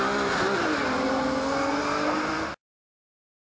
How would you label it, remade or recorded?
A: recorded